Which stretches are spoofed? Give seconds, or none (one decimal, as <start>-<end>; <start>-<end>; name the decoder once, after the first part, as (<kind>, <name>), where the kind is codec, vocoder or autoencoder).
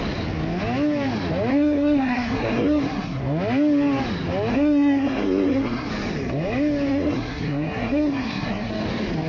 1.5-3.2 (codec, SNAC); 4.5-5.9; 6.9-8.7